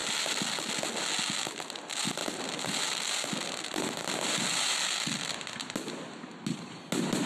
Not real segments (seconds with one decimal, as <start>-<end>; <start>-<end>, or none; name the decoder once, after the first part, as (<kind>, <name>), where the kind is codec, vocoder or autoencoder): none